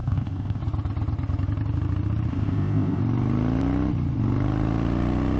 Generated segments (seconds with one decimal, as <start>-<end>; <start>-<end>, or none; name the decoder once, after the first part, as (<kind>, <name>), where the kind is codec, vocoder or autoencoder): 0.0-0.6 (codec, ZipCodec); 2.3-3.0